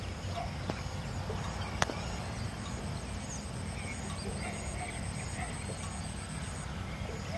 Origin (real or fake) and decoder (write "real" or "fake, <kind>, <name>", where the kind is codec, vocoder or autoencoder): real